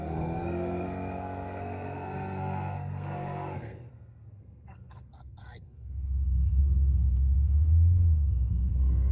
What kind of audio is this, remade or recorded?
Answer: remade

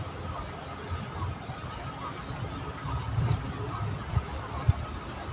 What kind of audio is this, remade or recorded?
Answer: recorded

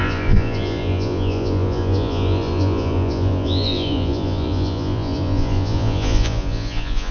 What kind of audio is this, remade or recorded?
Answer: remade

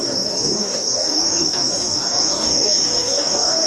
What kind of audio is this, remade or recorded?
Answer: remade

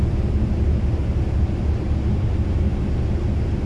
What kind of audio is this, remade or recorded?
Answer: recorded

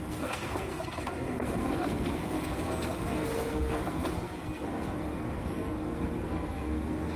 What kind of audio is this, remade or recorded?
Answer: remade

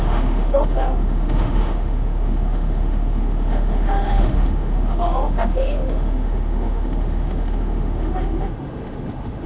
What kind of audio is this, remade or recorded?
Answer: remade